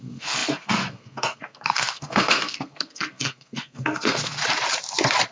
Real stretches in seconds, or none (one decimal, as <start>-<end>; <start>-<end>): 4.4-5.3

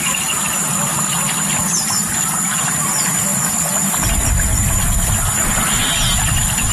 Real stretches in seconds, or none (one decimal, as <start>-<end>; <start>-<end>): 0.0-0.9; 2.6-3.3; 5.5-6.7